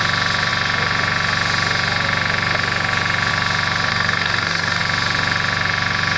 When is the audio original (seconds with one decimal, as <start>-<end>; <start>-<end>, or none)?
0.0-3.9; 4.8-6.2